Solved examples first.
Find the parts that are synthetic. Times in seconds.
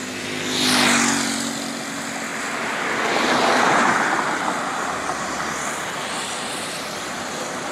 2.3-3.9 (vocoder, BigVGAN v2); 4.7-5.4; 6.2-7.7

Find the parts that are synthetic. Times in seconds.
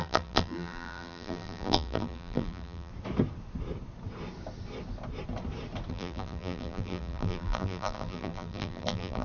0.0-2.9 (vocoder, BigVGAN v2); 5.9-9.2